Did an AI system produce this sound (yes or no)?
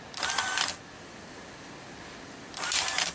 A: no